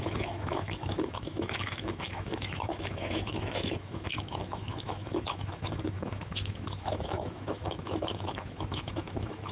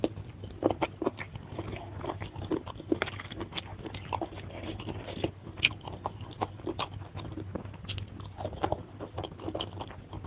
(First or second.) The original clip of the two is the second